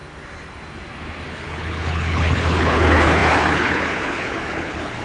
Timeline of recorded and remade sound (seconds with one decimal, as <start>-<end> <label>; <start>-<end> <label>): 0.0-1.3 recorded; 1.3-5.0 remade